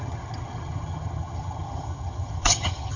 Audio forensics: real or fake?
fake